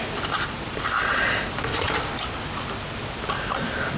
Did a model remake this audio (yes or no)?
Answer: no